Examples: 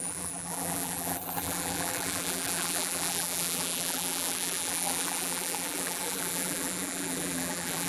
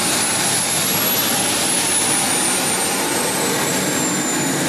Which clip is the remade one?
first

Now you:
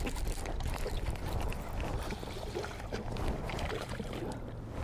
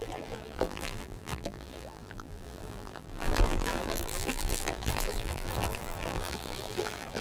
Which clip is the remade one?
second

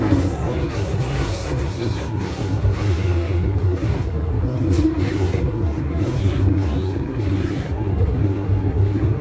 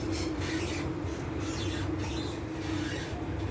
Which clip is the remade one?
first